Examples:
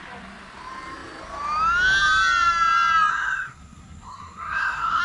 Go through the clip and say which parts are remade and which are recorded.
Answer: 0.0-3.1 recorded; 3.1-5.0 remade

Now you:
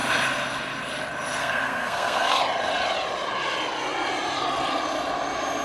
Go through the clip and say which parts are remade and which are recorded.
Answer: 0.0-1.4 recorded; 1.4-2.4 remade; 2.4-5.6 recorded